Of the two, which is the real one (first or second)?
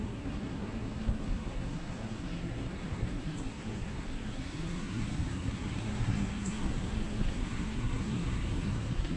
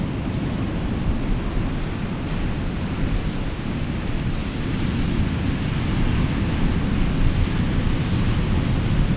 second